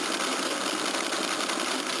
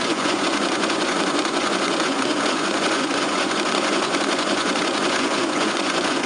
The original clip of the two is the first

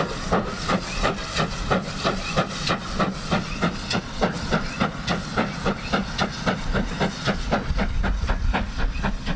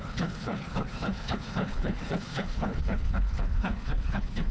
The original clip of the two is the first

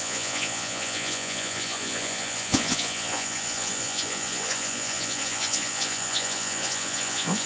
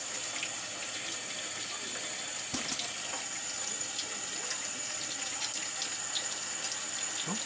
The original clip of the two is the second